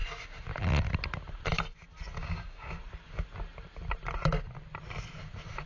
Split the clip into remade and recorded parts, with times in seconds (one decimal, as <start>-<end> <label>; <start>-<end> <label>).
0.0-2.2 recorded; 2.2-2.8 remade; 2.8-5.7 recorded